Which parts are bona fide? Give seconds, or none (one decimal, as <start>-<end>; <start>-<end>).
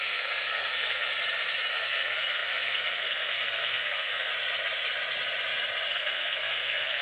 1.1-1.7; 4.3-5.9